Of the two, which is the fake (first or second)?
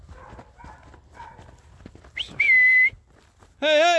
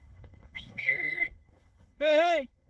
second